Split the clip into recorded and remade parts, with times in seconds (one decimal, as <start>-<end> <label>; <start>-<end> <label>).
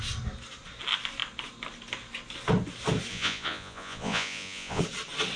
0.0-3.1 recorded; 3.1-4.8 remade; 4.8-5.4 recorded